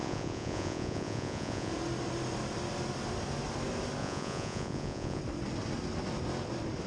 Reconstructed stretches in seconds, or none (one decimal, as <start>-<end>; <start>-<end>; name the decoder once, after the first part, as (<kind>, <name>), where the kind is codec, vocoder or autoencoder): 0.0-1.7 (vocoder, Vocos); 4.0-5.2